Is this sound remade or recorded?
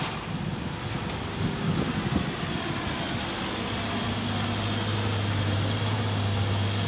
recorded